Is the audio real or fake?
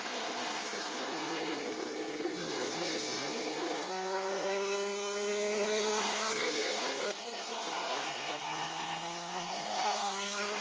fake